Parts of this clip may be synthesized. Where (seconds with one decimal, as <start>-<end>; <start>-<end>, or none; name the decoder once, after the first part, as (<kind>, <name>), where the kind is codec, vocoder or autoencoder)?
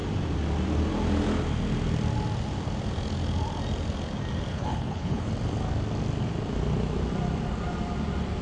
4.5-5.3 (codec, HILCodec)